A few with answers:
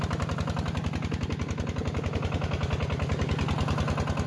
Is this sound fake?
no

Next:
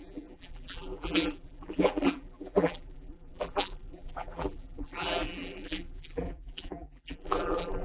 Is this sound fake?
yes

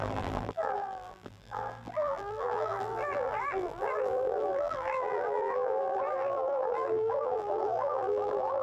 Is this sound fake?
yes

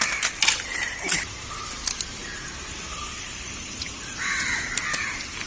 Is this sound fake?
no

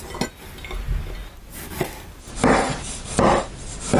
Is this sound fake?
no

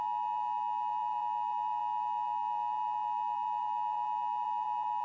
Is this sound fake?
yes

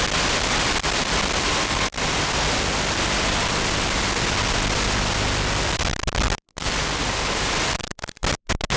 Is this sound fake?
no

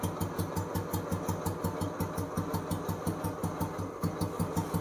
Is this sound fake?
no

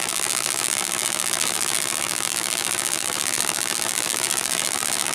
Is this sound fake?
yes